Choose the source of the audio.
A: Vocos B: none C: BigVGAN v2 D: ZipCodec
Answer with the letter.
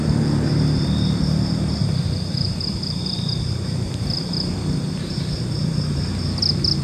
C